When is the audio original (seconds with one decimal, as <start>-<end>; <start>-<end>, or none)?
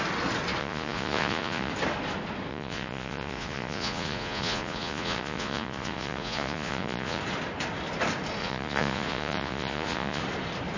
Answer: 0.0-0.6; 1.7-2.5; 7.2-8.4; 10.2-10.8